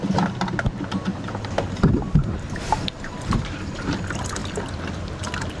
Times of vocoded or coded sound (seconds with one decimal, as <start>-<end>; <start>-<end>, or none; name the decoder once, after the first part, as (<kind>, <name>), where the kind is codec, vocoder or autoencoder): 1.1-3.7 (vocoder, BigVGAN v2)